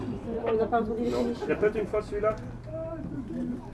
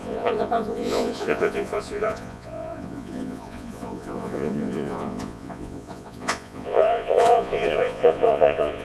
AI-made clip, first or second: second